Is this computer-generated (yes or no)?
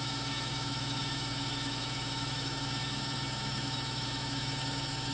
yes